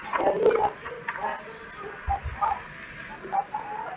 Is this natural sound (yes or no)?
yes